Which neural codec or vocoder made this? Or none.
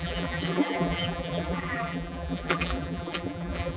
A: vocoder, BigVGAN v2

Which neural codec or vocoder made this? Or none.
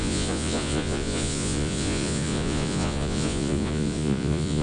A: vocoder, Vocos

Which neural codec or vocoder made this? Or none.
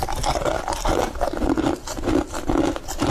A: none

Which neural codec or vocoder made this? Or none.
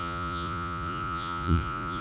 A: vocoder, Vocos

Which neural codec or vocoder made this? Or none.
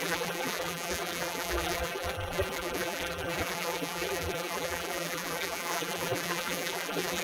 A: vocoder, BigVGAN v2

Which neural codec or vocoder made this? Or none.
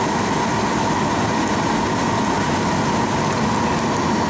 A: none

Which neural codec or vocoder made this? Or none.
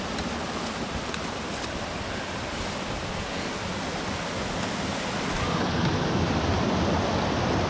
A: none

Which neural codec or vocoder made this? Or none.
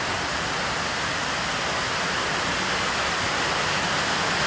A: none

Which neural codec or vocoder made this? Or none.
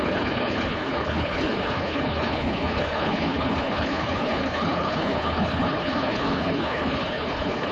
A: codec, HILCodec